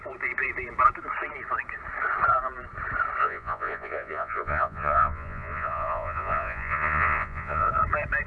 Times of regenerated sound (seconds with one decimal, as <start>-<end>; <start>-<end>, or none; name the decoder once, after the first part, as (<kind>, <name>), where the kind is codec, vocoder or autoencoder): 3.2-7.7 (vocoder, Vocos)